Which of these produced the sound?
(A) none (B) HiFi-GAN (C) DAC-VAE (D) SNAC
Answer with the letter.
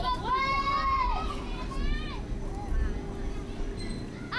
A